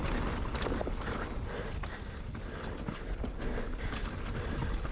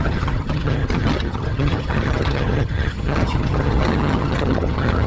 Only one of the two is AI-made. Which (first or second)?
second